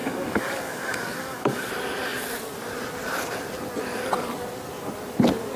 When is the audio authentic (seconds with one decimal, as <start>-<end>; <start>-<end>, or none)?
1.7-5.6